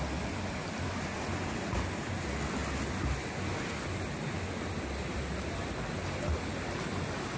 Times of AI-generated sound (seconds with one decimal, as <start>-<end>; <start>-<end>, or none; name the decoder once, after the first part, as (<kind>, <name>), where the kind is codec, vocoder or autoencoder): none